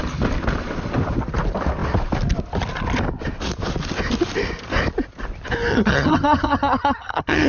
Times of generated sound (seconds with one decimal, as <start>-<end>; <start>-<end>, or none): 5.7-7.5